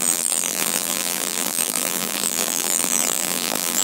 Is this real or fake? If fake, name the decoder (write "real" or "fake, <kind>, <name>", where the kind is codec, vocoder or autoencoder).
fake, vocoder, BigVGAN v2